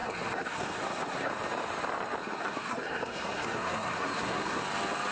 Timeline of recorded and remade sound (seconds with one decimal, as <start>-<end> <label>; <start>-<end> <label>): 0.0-1.3 remade; 1.3-2.2 recorded; 2.2-4.6 remade; 4.6-5.1 recorded